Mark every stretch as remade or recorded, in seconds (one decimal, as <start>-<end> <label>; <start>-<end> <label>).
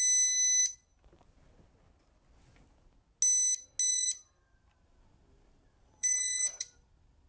0.0-3.9 recorded; 3.9-7.3 remade